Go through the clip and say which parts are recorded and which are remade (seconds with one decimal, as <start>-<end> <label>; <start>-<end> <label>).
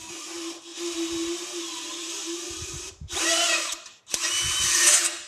0.0-0.7 recorded; 0.7-1.6 remade; 1.6-2.0 recorded; 2.0-4.0 remade; 4.0-5.3 recorded